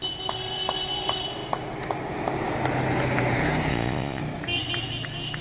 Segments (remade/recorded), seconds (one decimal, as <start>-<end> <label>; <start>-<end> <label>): 0.0-3.7 recorded; 3.7-4.2 remade; 4.2-5.4 recorded